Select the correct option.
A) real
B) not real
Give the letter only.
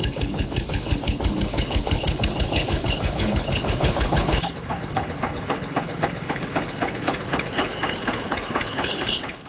B